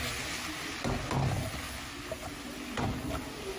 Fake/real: real